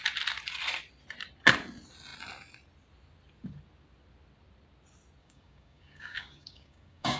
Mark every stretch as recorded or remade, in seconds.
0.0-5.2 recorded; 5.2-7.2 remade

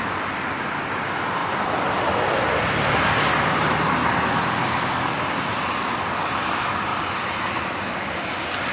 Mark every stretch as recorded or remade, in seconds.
0.0-8.7 recorded